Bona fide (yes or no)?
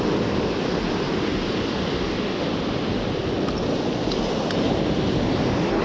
yes